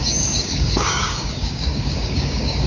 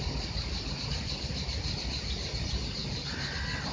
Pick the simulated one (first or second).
first